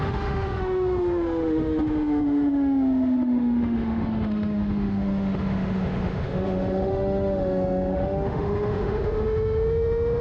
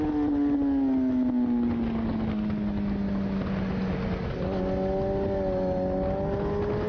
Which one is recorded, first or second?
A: second